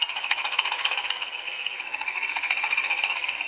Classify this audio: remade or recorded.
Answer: remade